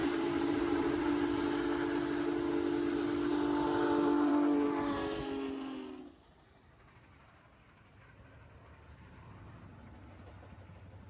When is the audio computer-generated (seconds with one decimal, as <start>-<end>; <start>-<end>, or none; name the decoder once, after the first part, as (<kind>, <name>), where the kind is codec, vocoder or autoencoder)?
0.0-1.1 (vocoder, BigVGAN v2)